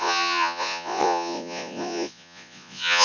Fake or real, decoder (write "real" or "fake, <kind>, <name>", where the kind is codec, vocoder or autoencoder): fake, vocoder, Vocos